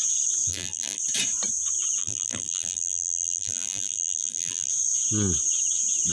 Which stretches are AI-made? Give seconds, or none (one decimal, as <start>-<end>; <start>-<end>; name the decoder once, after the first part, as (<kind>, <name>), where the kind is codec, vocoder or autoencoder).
0.5-1.0 (vocoder, BigVGAN v2); 2.0-4.7